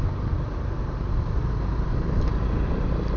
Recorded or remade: remade